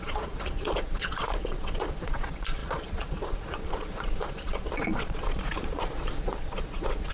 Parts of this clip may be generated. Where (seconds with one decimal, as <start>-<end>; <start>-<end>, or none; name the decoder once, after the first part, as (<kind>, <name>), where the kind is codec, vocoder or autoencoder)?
0.0-7.1 (vocoder, Vocos)